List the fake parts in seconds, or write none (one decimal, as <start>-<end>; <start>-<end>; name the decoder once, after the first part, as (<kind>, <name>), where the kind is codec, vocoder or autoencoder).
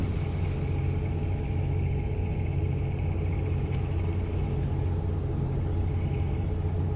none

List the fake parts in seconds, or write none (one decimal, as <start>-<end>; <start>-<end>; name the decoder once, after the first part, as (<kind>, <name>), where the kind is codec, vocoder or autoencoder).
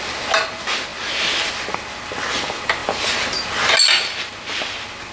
none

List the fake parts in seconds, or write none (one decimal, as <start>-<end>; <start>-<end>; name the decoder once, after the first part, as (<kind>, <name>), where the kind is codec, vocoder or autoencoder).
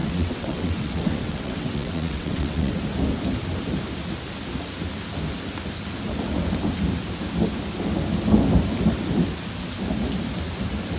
0.0-2.8 (vocoder, WaveNeXt)